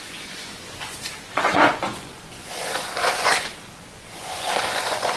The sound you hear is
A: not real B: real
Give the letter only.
A